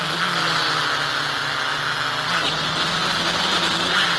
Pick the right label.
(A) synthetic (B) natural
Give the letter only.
B